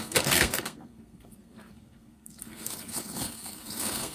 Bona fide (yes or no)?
no